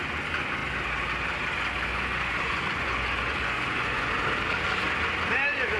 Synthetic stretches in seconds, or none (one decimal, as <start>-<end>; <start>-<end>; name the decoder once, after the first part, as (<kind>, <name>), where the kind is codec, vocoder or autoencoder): 1.9-4.1 (vocoder, Vocos)